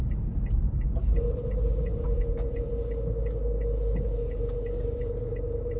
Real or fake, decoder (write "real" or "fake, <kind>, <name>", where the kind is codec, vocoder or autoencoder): real